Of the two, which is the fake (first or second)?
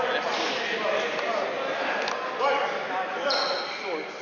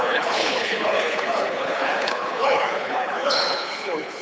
second